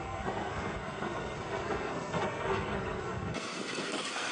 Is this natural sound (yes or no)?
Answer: no